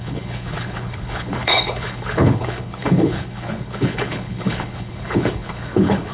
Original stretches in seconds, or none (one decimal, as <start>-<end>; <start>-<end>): none